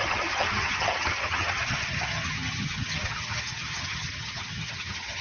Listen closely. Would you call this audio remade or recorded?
remade